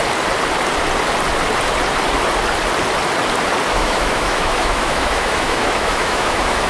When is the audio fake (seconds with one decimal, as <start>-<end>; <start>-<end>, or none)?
3.7-6.7